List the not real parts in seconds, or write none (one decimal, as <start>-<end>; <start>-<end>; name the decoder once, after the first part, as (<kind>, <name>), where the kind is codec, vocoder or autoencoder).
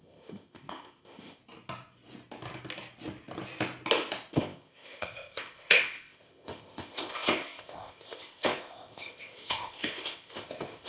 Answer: 0.0-1.4 (codec, ZipCodec); 4.3-10.9